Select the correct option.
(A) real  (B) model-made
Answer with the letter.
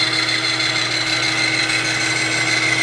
A